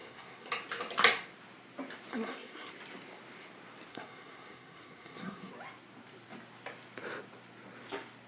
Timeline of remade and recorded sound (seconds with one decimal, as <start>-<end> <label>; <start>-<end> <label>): 0.0-0.5 remade; 0.5-2.1 recorded; 2.1-2.7 remade; 2.7-3.9 recorded; 3.9-5.5 remade; 5.5-8.3 recorded